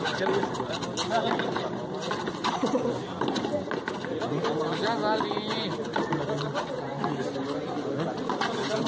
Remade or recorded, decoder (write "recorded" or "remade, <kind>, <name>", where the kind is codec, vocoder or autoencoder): recorded